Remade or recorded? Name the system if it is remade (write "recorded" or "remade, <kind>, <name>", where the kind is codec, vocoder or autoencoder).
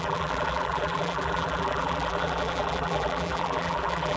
remade, vocoder, BigVGAN v2